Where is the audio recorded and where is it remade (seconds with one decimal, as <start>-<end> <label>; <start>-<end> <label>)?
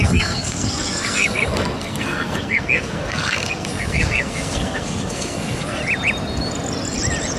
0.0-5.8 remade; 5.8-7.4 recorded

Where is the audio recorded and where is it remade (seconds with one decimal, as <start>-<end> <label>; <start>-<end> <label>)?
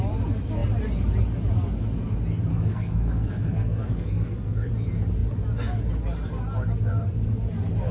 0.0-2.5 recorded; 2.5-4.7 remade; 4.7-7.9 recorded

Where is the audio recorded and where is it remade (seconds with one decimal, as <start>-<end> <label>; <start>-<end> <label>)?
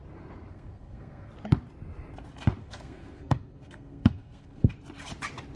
0.0-0.5 recorded; 0.5-1.3 remade; 1.3-2.6 recorded; 2.6-4.7 remade; 4.7-5.6 recorded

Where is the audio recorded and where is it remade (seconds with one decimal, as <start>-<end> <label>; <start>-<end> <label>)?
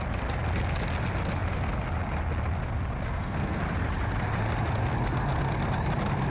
0.0-3.1 recorded; 3.1-3.6 remade; 3.6-6.3 recorded